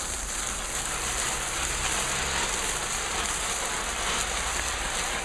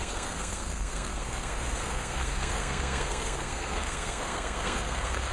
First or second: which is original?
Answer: first